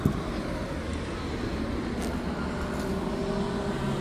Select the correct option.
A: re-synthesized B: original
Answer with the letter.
B